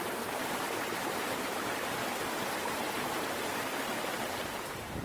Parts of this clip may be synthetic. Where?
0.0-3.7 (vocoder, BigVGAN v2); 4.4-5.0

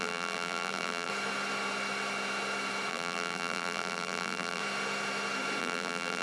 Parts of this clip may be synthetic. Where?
0.0-1.1 (vocoder, BigVGAN v2); 2.9-4.6; 5.6-6.2

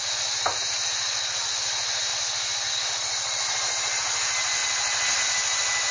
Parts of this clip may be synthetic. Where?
none

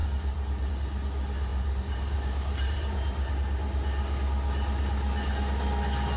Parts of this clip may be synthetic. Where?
0.0-0.7 (vocoder, BigVGAN v2); 1.5-3.3

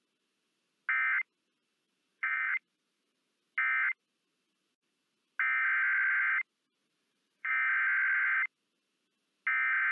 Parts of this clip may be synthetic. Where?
2.1-3.2 (vocoder, BigVGAN v2); 6.8-7.5

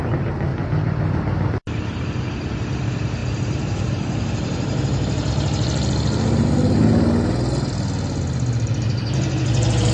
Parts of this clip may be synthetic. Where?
0.5-2.6 (vocoder, BigVGAN v2); 3.2-5.3

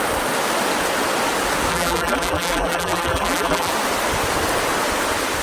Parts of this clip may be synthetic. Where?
1.7-3.7 (vocoder, BigVGAN v2)